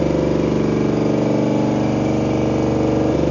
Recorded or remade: recorded